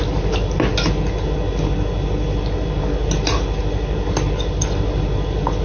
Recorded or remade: recorded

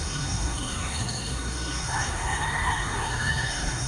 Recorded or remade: remade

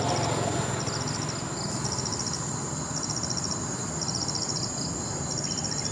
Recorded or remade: recorded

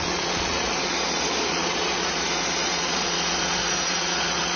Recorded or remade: remade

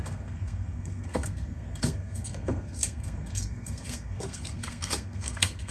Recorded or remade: remade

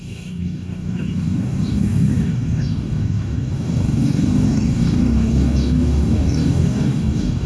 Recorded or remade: remade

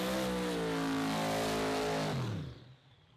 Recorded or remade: recorded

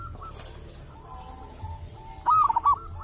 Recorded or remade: recorded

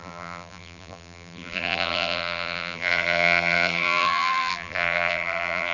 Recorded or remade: remade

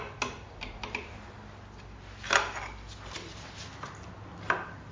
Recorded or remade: recorded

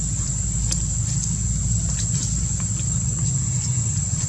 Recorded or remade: recorded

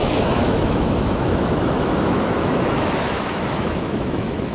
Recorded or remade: remade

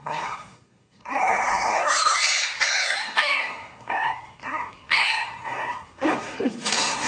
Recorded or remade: remade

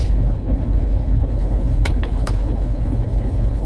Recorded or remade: remade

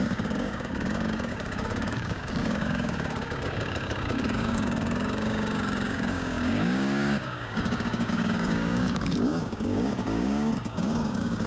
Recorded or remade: remade